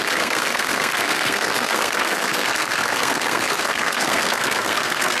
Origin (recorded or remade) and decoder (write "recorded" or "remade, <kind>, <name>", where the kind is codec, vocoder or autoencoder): remade, codec, SNAC